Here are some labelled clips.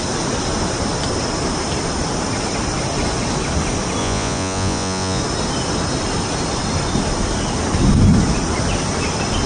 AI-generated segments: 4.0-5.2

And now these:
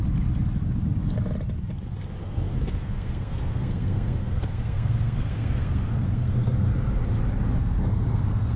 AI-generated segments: 2.2-6.7; 7.6-8.6

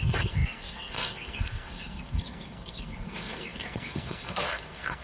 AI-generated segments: 0.0-5.0

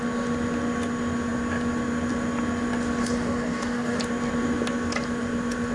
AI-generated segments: 3.0-4.0